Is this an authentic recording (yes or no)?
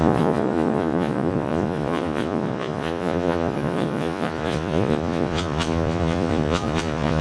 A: no